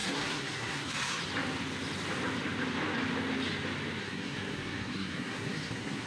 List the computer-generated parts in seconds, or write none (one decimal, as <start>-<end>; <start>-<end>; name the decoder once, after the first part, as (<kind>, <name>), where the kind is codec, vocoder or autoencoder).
0.0-1.2 (codec, SNAC); 4.0-6.1